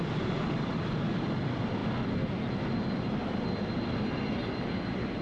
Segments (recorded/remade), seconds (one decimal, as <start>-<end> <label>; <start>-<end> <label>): 0.0-5.2 recorded